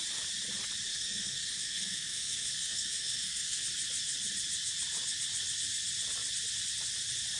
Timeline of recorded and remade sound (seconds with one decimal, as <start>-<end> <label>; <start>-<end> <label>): 0.0-0.9 recorded; 0.9-3.6 remade; 3.6-7.4 recorded